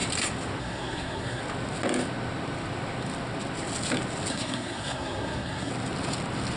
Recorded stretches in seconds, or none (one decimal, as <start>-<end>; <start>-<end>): 0.0-0.6; 1.4-4.3; 5.7-6.6